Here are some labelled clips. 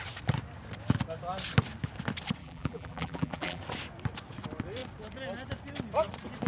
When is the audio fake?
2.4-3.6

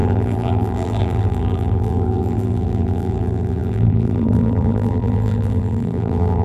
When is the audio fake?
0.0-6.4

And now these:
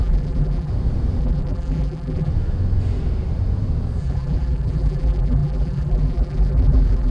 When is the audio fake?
0.0-0.7; 1.2-2.3; 4.0-7.1

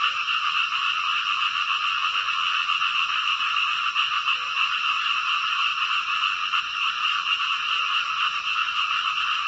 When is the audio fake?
0.0-1.1; 2.9-5.7; 6.6-9.5

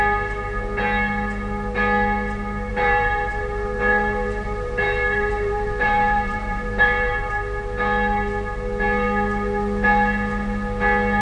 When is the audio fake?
2.7-7.3

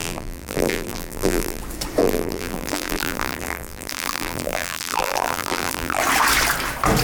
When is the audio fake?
0.0-1.6; 2.0-6.0

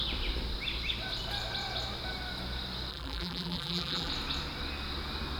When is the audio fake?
2.9-4.1